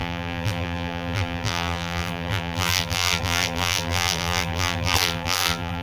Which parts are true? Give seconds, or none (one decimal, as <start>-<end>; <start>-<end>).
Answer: none